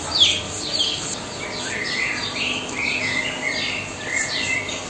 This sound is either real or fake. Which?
fake